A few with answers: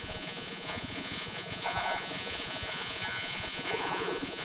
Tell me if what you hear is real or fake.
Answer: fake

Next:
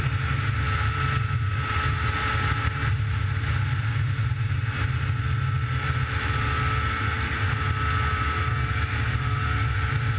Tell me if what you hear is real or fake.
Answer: real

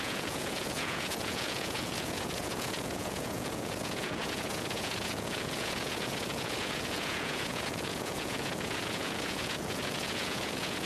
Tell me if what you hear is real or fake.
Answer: fake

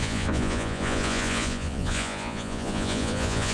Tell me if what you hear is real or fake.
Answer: fake